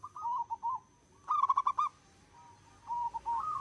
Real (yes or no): yes